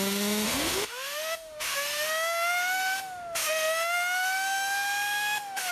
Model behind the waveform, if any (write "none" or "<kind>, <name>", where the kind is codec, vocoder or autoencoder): autoencoder, DAC-VAE